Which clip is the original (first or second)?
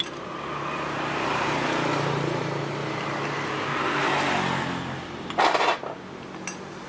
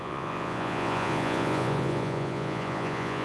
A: first